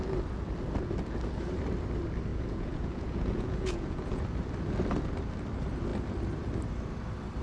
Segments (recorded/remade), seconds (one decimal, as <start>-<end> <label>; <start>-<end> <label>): 0.0-2.3 recorded; 2.3-4.2 remade; 4.2-7.4 recorded